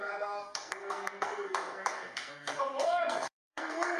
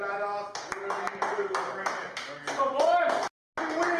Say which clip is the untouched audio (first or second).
second